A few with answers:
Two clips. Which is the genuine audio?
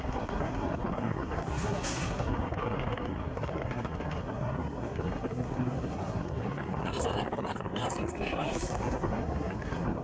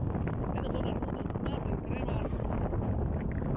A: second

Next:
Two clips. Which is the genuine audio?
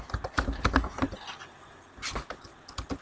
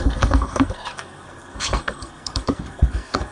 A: first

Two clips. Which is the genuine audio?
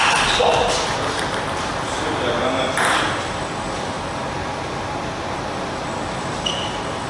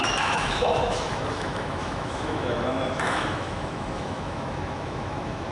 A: first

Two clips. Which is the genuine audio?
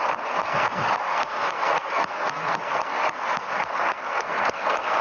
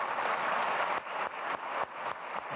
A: second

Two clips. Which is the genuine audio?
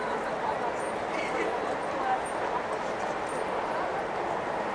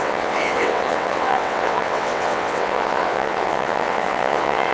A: first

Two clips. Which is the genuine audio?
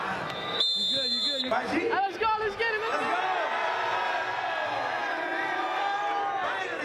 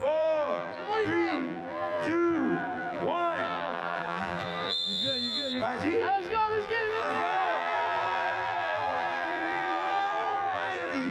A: first